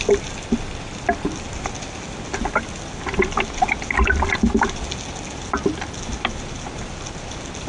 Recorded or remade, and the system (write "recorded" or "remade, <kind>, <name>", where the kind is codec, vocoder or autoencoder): recorded